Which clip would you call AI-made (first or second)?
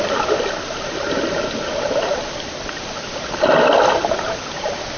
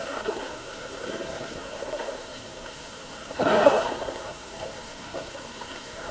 second